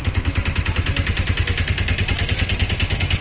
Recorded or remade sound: recorded